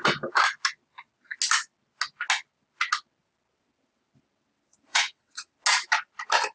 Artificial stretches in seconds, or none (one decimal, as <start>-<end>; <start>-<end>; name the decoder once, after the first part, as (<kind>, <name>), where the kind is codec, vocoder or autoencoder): 4.9-5.5 (vocoder, WaveNeXt)